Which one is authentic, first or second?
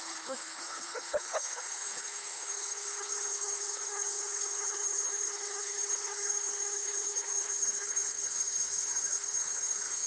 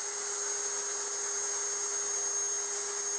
second